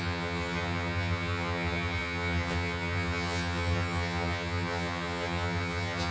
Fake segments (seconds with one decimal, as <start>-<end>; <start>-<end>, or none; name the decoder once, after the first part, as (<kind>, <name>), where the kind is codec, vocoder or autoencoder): 0.0-6.1 (vocoder, HiFi-GAN)

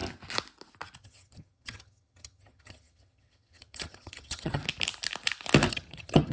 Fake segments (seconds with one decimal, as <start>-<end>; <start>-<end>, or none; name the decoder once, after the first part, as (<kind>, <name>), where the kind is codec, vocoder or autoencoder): 1.0-4.6 (vocoder, HiFi-GAN); 5.7-6.3

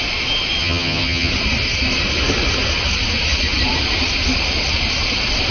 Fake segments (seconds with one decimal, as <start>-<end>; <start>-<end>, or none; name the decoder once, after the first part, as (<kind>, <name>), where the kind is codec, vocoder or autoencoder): 0.6-1.3 (vocoder, HiFi-GAN)

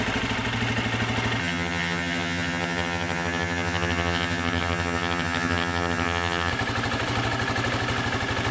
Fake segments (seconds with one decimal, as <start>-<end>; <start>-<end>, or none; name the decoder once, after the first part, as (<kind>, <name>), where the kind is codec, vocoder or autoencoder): 1.4-6.5 (vocoder, HiFi-GAN)

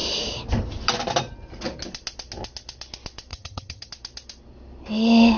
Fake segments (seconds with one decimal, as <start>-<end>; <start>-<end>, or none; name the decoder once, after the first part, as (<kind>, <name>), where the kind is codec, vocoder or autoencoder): 3.3-3.9 (vocoder, HiFi-GAN)

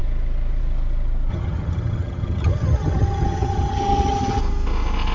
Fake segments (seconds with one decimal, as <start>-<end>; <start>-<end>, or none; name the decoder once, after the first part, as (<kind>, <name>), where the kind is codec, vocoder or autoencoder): 1.3-4.4 (vocoder, HiFi-GAN)

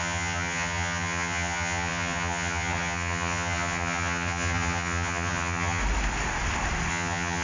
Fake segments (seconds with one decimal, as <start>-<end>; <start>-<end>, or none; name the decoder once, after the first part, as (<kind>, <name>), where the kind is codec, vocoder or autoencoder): 0.0-5.8 (vocoder, HiFi-GAN); 6.9-7.4

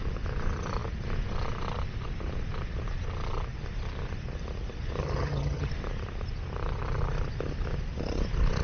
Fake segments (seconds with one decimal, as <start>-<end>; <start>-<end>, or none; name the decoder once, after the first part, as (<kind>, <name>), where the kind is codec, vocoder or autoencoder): 5.0-5.7 (vocoder, HiFi-GAN)